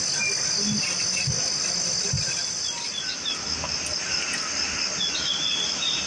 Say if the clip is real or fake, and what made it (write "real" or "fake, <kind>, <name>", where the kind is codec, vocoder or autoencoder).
real